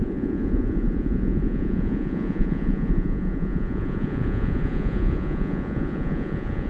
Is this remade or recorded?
remade